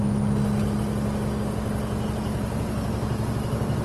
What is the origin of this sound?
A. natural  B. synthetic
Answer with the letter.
A